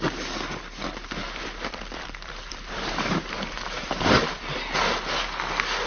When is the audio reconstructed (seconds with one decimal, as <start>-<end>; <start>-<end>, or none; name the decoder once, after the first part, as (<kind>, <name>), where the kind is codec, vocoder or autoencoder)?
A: 1.2-4.6 (vocoder, BigVGAN v2)